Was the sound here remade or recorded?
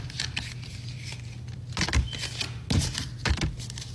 recorded